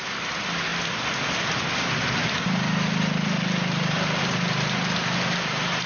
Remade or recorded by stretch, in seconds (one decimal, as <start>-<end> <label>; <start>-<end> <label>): 0.0-5.9 recorded